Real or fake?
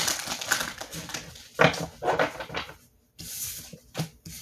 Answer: real